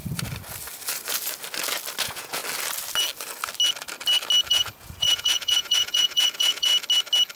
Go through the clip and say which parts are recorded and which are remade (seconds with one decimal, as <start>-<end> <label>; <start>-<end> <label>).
0.0-2.0 recorded; 2.0-2.4 remade; 2.4-4.5 recorded; 4.5-6.7 remade; 6.7-7.4 recorded